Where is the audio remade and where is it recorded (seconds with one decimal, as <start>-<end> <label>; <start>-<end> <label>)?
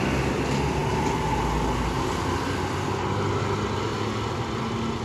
0.0-5.0 recorded